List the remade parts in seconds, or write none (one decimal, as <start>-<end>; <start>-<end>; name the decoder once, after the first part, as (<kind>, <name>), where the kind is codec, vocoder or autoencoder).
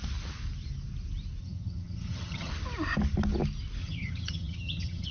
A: 1.4-2.5 (vocoder, HiFi-GAN); 3.8-5.1